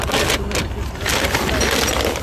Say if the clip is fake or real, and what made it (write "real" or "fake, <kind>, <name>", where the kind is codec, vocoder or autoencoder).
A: real